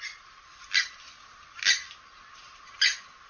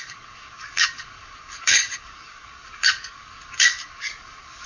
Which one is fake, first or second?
second